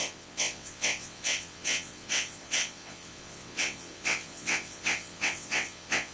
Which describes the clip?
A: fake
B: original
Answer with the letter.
A